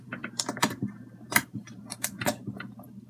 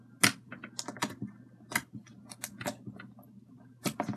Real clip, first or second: second